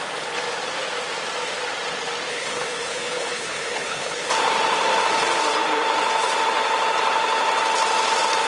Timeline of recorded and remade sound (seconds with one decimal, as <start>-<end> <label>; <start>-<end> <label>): 0.0-2.3 recorded; 2.3-4.3 remade; 4.3-8.5 recorded